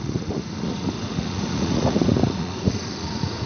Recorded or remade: remade